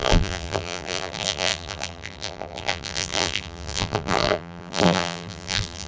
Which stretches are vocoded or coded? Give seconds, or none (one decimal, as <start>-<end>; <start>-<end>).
0.0-5.9